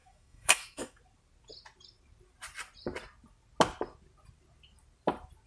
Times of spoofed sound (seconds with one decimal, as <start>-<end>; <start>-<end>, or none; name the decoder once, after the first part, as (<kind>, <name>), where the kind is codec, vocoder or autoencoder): 0.0-1.0 (autoencoder, DAC-VAE)